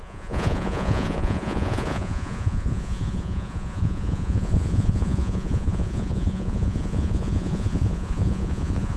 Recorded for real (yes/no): no